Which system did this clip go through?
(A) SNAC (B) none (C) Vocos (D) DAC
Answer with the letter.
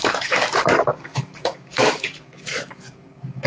D